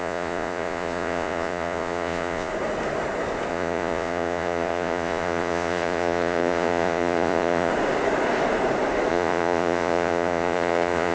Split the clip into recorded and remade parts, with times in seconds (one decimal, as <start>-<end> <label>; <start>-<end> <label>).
0.0-2.5 remade; 2.5-3.5 recorded; 3.5-7.7 remade; 7.7-9.1 recorded; 9.1-11.1 remade